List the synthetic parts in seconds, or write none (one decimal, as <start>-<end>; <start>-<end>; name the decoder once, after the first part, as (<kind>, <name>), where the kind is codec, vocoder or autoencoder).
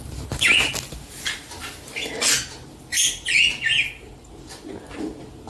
none